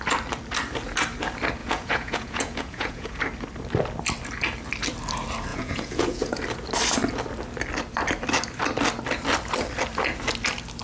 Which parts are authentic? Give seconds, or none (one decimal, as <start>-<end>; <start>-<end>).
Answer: 0.0-1.6; 3.2-5.5; 6.4-10.8